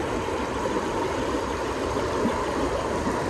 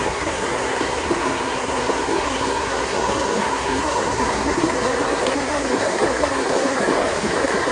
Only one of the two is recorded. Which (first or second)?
first